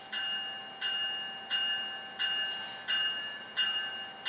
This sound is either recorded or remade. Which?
recorded